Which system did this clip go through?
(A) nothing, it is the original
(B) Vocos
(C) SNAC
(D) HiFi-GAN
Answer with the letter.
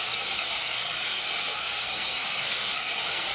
C